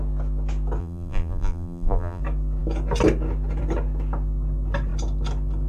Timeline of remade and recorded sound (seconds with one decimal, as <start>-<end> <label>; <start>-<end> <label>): 0.0-0.8 recorded; 0.8-2.2 remade; 2.2-5.7 recorded